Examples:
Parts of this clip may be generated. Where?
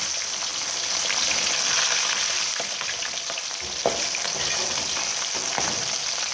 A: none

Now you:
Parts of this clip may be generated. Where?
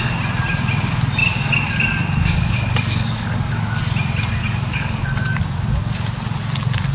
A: 1.2-3.8 (codec, DAC); 4.4-5.4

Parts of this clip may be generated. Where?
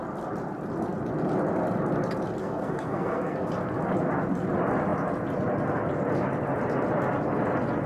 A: 2.4-3.5 (codec, SNAC)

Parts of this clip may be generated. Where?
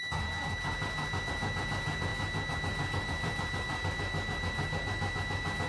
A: none